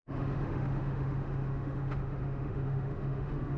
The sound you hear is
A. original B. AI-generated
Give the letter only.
B